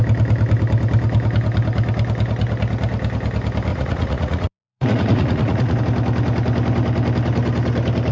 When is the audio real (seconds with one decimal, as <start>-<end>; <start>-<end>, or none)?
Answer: 0.0-3.7; 5.8-8.1

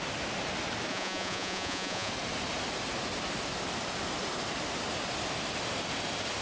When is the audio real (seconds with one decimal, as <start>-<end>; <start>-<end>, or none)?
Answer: 0.0-0.9; 2.1-6.4

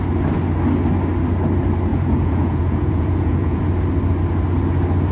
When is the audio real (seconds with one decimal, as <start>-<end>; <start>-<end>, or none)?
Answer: 0.0-1.9; 3.6-5.1

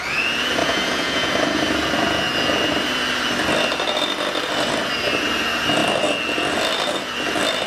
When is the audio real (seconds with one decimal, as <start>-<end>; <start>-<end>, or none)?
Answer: 0.0-0.6; 1.3-7.7

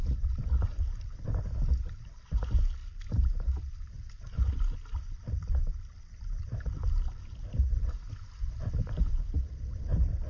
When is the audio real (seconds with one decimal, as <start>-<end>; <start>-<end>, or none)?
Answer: 0.0-10.3

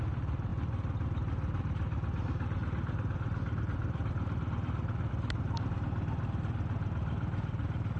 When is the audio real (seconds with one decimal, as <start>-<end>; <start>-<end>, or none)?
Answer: 0.0-8.0

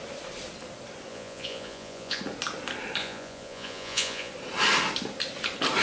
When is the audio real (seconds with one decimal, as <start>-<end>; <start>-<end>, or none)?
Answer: 0.0-1.1; 2.2-3.0; 4.3-5.8

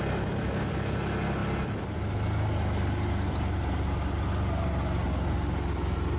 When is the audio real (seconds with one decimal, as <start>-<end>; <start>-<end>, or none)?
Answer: 0.0-6.2